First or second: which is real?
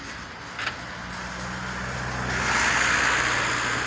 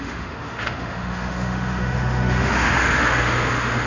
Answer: first